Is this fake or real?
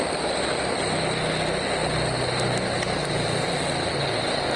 real